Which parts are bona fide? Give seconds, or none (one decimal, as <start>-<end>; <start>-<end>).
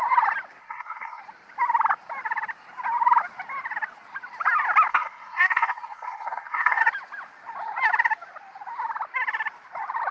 0.0-0.6; 1.2-4.9; 6.8-10.1